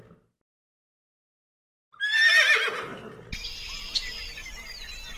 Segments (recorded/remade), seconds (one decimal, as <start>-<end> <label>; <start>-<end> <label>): 0.0-5.2 recorded